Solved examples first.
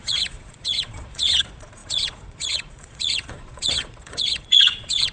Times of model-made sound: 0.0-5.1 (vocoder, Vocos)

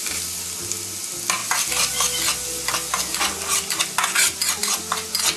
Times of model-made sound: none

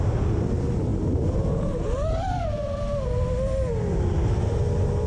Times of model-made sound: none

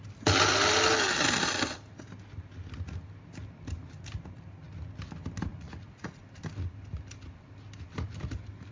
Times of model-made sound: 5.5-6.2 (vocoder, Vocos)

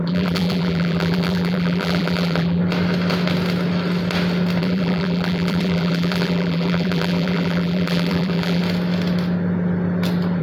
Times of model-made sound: 0.0-2.6 (vocoder, BigVGAN v2); 4.6-8.6

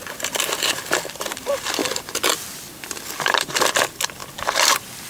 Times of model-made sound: 0.0-4.2 (vocoder, BigVGAN v2)